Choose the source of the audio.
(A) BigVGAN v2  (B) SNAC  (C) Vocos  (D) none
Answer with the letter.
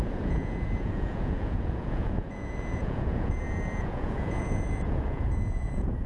C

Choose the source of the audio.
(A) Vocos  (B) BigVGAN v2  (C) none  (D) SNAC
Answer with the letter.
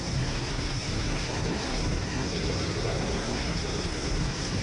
D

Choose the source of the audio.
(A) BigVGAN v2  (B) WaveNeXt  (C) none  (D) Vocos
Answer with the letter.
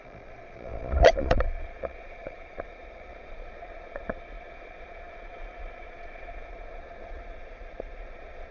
D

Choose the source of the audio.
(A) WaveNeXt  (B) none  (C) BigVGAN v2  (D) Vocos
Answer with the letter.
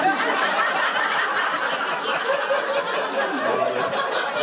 B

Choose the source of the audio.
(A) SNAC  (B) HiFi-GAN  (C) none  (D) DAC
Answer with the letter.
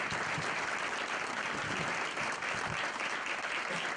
C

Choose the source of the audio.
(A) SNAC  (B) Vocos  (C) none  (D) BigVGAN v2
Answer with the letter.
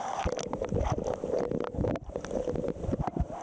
C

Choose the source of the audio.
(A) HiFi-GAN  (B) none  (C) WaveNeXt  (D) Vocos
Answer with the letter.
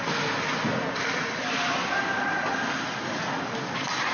B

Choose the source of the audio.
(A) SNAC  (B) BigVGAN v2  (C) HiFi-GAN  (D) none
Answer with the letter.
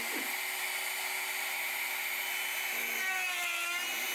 D